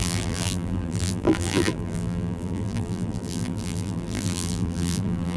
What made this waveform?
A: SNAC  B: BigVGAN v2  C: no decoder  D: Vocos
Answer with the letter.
B